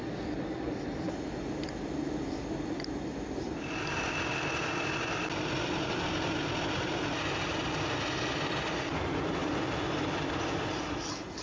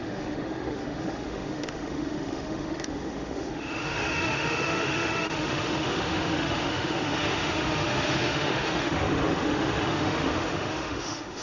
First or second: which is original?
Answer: first